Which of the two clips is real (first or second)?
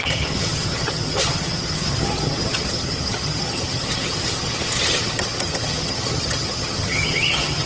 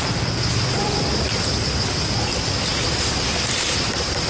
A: second